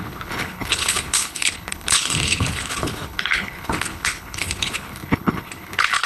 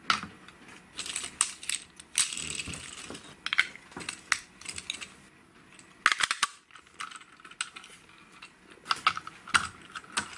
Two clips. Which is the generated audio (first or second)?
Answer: first